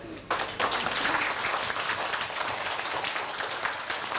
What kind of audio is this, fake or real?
real